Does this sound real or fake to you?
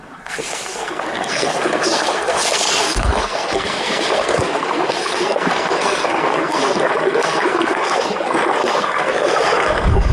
fake